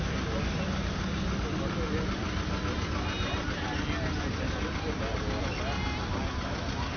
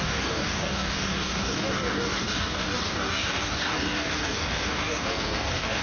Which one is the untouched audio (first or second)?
first